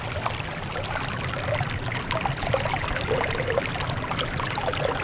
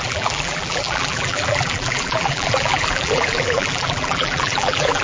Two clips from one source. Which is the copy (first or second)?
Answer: second